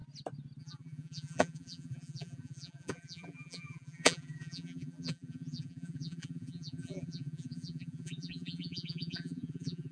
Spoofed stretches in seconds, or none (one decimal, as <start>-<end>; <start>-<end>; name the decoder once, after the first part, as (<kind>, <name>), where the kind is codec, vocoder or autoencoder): 0.6-9.9 (vocoder, BigVGAN v2)